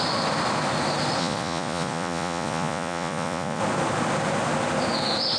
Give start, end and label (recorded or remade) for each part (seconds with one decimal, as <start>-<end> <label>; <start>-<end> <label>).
0.0-1.2 recorded; 1.2-3.6 remade; 3.6-5.4 recorded